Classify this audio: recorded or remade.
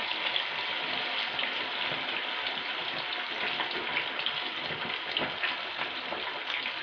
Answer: recorded